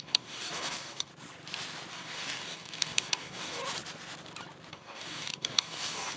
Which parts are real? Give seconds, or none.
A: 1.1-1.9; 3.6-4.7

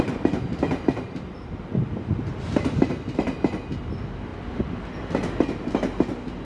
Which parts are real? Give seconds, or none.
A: 0.0-6.4

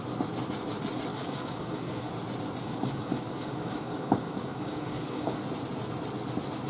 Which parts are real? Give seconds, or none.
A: 0.0-1.1; 2.1-2.6; 5.4-6.7

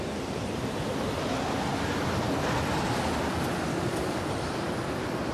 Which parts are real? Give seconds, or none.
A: 0.0-3.7; 4.3-5.3

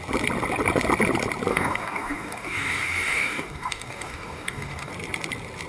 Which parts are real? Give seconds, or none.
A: 0.0-1.5; 4.9-5.7

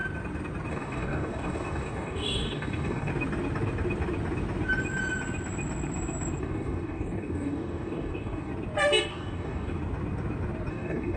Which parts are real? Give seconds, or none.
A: 0.0-0.7; 3.1-6.4; 8.5-9.1; 9.8-10.7

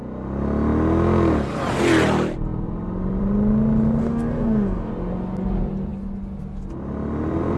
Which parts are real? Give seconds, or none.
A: 0.0-4.0; 4.9-7.6